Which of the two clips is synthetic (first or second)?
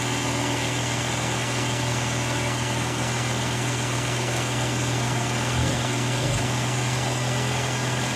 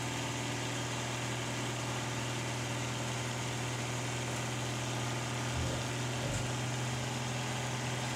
first